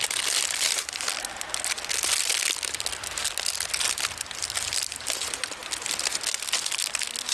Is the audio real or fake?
real